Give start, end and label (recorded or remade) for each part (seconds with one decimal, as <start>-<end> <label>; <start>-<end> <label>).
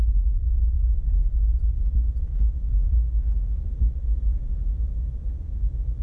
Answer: 0.0-6.0 recorded